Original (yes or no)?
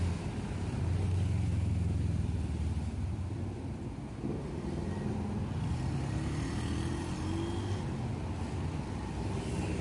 yes